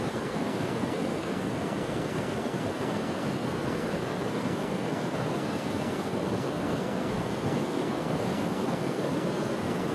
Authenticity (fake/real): fake